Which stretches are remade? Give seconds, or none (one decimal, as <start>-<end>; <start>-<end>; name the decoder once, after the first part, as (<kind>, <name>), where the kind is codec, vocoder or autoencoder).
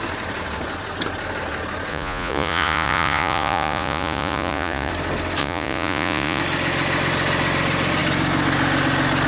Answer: 1.9-4.9 (vocoder, Vocos); 5.4-6.4